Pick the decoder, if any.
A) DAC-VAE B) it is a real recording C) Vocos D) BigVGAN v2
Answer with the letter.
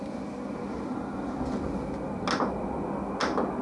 B